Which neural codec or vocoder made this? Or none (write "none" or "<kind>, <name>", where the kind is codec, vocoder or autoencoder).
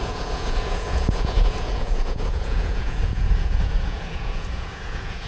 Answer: vocoder, Vocos